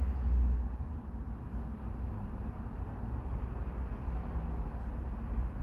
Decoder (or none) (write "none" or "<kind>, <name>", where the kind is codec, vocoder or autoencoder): none